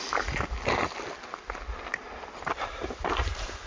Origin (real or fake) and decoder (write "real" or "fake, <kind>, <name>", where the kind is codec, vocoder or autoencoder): real